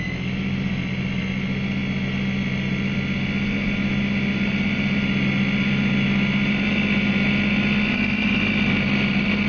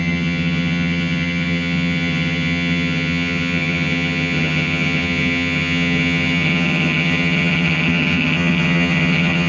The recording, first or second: first